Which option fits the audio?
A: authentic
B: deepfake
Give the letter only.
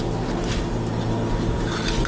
A